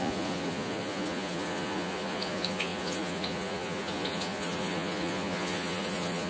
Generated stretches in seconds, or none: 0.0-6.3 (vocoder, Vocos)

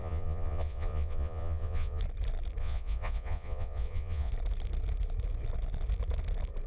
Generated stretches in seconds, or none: 0.0-2.0 (vocoder, Vocos); 2.6-4.3

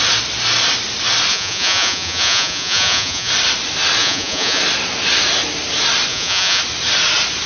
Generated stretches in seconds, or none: 1.3-3.3 (vocoder, Vocos); 4.0-4.6; 6.1-6.6

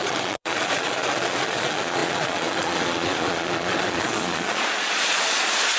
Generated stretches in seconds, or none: 0.0-5.8 (vocoder, Vocos)

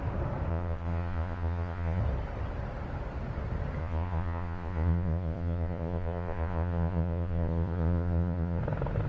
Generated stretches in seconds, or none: 0.5-2.0 (vocoder, Vocos); 3.8-8.6

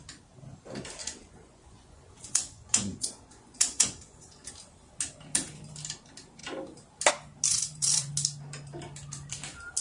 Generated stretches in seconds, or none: 1.0-4.5 (vocoder, Vocos); 7.5-8.1

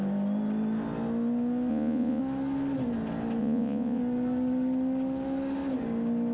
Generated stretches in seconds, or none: 1.7-2.2 (vocoder, Vocos); 3.4-4.0

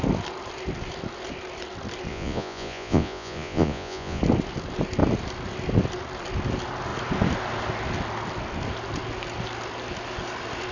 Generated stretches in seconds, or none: 2.1-4.2 (vocoder, Vocos)